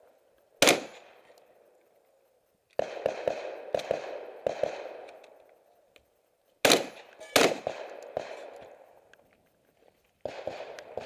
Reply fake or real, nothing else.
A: real